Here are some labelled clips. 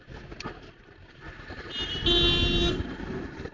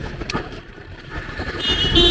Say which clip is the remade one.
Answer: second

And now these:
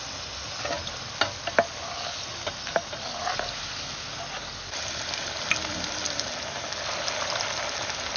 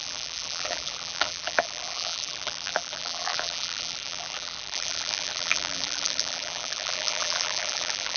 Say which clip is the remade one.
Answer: second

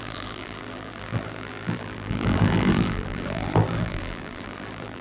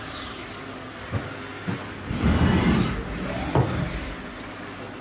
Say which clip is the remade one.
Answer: first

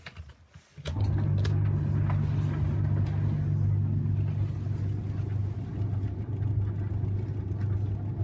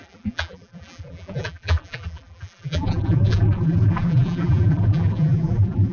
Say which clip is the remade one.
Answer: second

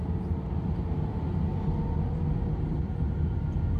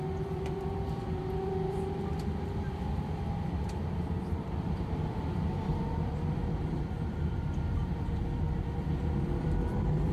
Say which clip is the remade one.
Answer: second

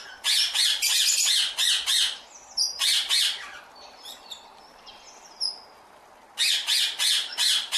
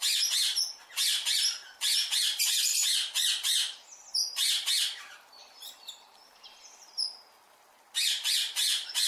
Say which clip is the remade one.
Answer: second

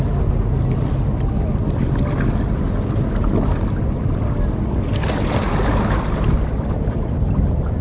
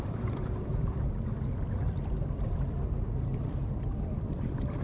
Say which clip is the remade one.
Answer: second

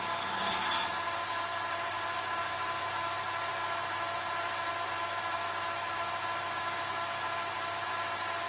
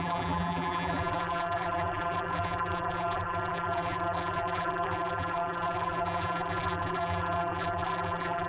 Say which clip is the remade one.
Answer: second